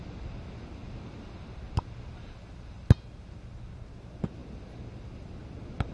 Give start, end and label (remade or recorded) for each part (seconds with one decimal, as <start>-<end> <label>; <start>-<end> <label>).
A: 0.0-5.9 recorded